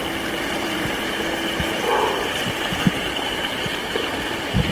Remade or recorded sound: recorded